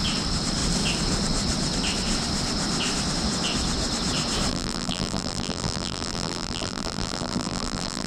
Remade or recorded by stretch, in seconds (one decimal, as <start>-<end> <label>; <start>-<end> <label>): 0.0-4.5 recorded; 4.5-8.1 remade